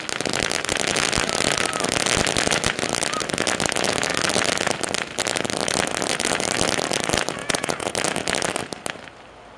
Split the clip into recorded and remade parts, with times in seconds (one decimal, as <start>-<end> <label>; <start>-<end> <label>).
0.0-7.4 recorded; 7.4-7.9 remade; 7.9-9.6 recorded